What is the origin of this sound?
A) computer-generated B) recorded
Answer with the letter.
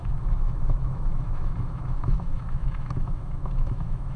A